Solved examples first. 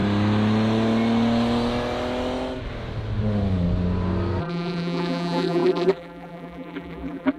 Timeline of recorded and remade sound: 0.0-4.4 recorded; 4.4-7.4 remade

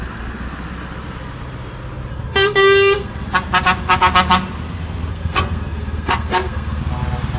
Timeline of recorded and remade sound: 0.0-2.1 recorded; 2.1-3.1 remade; 3.1-5.1 recorded; 5.1-6.8 remade; 6.8-7.4 recorded

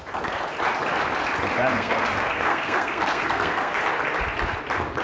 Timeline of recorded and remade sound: 0.0-1.7 recorded; 1.7-3.8 remade; 3.8-5.0 recorded

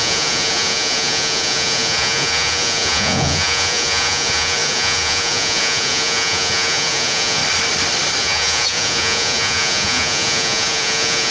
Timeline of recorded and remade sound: 0.0-7.4 remade; 7.4-8.2 recorded; 8.2-11.3 remade